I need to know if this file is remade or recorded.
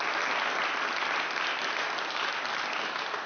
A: recorded